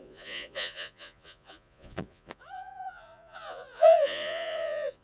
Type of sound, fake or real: fake